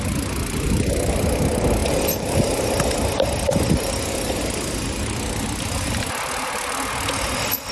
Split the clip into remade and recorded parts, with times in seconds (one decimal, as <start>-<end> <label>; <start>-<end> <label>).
0.0-7.7 recorded